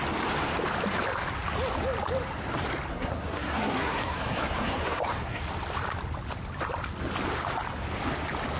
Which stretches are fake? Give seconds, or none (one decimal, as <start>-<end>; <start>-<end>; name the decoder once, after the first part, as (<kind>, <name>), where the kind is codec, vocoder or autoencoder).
2.9-5.4 (codec, SNAC)